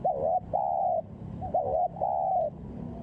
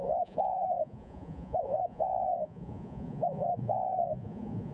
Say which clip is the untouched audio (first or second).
first